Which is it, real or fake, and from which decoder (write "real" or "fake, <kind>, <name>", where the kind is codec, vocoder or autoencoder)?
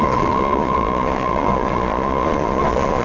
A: fake, vocoder, Vocos